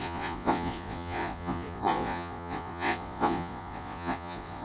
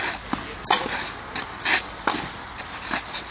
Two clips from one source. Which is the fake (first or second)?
first